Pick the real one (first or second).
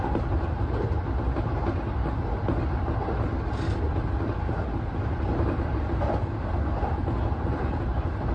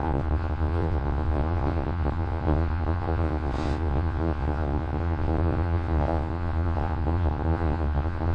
first